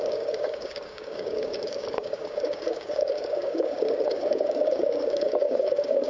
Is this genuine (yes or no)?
no